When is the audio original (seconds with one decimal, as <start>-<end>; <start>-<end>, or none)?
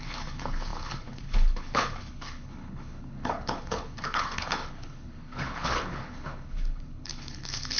none